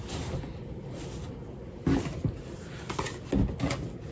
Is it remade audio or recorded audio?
recorded